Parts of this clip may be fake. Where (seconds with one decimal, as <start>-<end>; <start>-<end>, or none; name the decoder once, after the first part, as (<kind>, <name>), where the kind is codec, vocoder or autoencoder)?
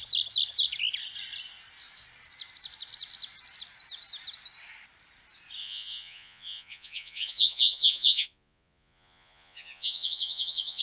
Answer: 5.6-10.8 (vocoder, Vocos)